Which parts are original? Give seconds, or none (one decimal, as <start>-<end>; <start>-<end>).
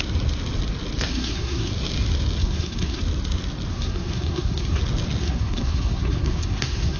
0.0-1.1; 1.7-2.4; 3.0-3.7; 4.8-5.2